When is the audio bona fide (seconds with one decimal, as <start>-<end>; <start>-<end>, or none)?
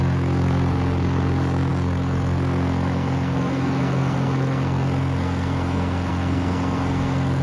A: none